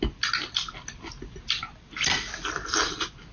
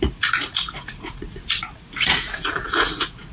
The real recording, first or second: first